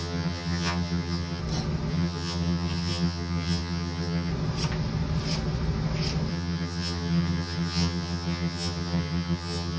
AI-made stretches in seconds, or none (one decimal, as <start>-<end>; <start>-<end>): 0.0-1.4; 1.9-4.3; 6.3-9.8